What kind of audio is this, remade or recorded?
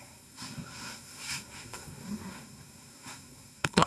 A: remade